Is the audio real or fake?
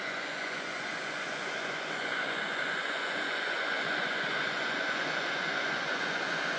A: fake